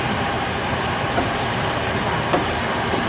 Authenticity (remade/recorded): remade